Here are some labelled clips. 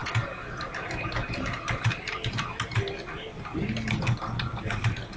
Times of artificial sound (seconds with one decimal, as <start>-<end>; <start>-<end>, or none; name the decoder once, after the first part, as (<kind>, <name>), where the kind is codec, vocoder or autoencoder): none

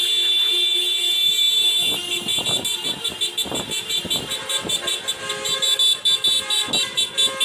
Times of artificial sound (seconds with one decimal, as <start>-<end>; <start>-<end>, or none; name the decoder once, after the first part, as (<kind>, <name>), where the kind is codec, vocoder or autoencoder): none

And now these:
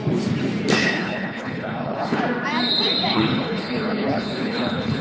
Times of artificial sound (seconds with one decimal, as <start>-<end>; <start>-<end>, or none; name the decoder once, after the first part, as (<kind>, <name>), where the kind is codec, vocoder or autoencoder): 0.8-2.2 (codec, HILCodec); 3.1-5.0

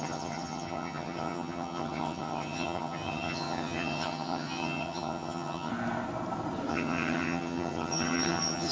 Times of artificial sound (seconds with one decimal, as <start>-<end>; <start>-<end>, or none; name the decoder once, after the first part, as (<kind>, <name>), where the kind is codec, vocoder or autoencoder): 0.0-5.7 (vocoder, HiFi-GAN); 6.7-8.7

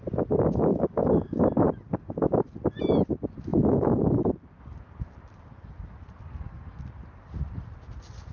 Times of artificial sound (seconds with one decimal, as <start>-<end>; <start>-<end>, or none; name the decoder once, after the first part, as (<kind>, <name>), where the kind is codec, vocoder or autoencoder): 0.7-1.4 (codec, DAC)

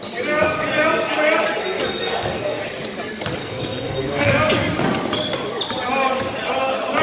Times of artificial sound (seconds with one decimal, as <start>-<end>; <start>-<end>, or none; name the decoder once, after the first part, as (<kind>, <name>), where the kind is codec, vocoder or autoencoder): 1.6-2.6 (codec, SNAC); 3.4-4.3